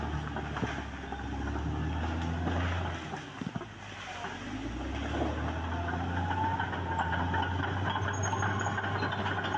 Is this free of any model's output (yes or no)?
yes